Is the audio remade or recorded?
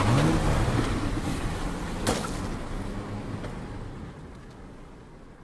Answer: recorded